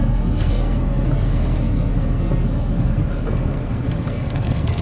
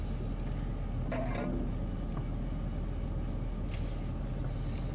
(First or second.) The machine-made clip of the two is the first